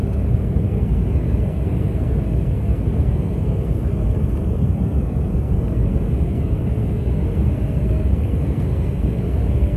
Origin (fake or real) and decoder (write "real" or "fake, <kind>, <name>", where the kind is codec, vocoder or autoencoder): fake, codec, SNAC